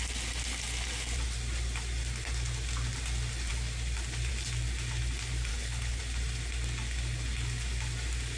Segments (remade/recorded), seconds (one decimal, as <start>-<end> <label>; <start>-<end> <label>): 0.0-5.5 recorded; 5.5-6.0 remade; 6.0-8.4 recorded